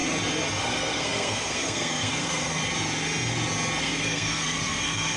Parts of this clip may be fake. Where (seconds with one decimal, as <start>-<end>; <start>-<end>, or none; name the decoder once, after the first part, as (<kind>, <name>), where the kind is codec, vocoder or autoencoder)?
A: 0.6-2.6 (codec, SNAC); 3.8-5.2